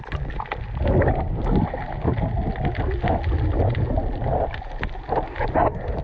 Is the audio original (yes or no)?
yes